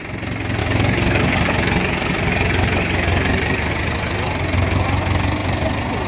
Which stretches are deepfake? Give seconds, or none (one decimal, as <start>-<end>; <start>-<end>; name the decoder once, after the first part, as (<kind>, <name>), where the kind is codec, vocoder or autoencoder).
0.6-3.7 (codec, DAC)